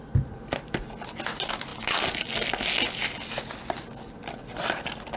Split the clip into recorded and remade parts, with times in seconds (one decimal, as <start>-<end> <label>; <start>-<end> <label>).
0.0-5.2 recorded